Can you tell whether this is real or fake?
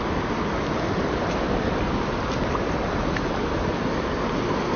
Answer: real